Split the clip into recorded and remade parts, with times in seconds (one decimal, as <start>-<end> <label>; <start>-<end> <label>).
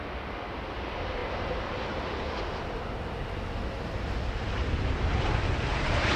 0.0-6.2 recorded